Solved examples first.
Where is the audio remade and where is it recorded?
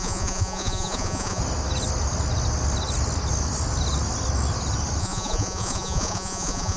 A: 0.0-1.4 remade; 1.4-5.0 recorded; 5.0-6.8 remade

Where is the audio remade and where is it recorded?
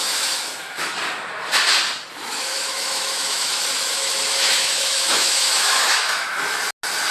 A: 0.0-1.0 remade; 1.0-2.3 recorded; 2.3-6.6 remade; 6.6-7.1 recorded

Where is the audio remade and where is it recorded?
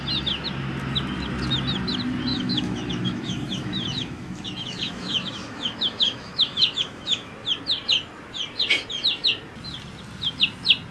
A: 0.0-2.3 recorded; 2.3-7.3 remade; 7.3-10.9 recorded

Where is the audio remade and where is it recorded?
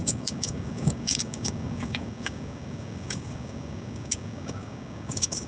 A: 0.0-5.5 remade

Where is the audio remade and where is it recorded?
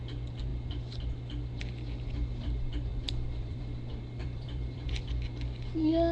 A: 0.0-2.9 recorded; 2.9-3.6 remade; 3.6-4.2 recorded; 4.2-5.1 remade; 5.1-6.1 recorded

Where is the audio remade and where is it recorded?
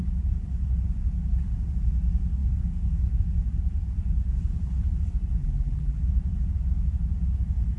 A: 0.0-5.4 recorded; 5.4-6.0 remade; 6.0-7.8 recorded